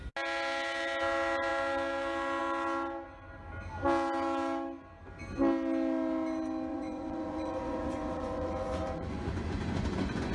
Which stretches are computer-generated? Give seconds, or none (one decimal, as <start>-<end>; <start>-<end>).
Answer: 6.7-10.3